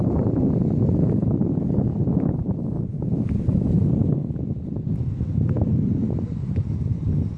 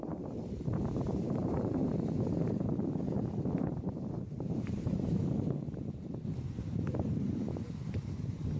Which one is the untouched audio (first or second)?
first